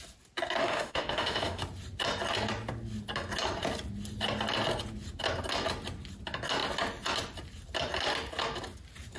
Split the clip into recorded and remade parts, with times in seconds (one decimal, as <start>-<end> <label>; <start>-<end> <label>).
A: 0.0-0.6 recorded; 0.6-1.6 remade; 1.6-9.2 recorded